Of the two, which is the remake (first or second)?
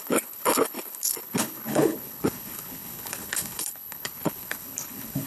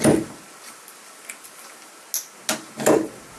first